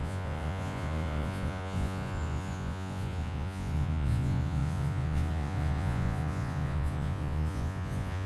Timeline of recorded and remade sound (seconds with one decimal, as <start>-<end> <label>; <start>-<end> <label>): 0.0-8.3 remade

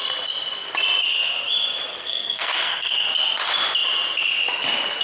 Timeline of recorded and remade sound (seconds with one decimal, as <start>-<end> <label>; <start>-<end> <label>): 0.0-1.9 recorded; 1.9-3.1 remade; 3.1-5.0 recorded

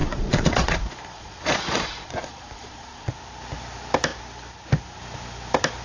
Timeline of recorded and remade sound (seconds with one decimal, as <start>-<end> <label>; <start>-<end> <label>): 0.0-3.1 remade; 3.1-5.8 recorded

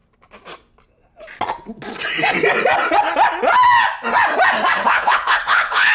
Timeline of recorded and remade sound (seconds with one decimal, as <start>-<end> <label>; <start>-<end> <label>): 0.0-4.8 recorded; 4.8-5.9 remade

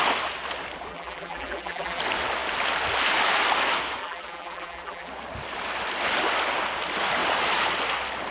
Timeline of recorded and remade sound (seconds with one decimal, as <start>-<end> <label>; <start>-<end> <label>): 0.0-0.9 recorded; 0.9-2.0 remade; 2.0-4.0 recorded; 4.0-5.1 remade; 5.1-8.3 recorded

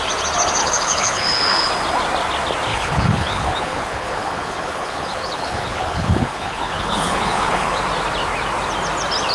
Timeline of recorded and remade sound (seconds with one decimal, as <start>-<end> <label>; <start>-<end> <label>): 0.0-0.6 recorded; 0.6-1.7 remade; 1.7-2.7 recorded; 2.7-7.8 remade; 7.8-9.3 recorded

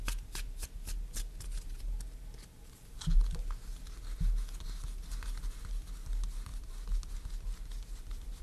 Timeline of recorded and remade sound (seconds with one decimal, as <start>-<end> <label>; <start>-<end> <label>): 0.0-6.5 recorded; 6.5-8.4 remade

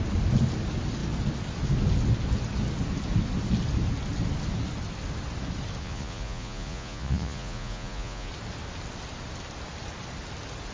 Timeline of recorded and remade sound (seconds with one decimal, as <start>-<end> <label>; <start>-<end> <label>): 0.0-5.8 recorded; 5.8-8.3 remade; 8.3-10.7 recorded